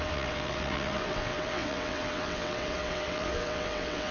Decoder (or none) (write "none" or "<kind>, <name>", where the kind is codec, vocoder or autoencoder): vocoder, WaveNeXt